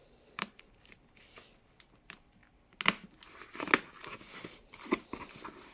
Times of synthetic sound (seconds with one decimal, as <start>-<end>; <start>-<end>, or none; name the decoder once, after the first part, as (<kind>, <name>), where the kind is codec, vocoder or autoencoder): 0.0-2.4 (vocoder, BigVGAN v2); 3.8-5.7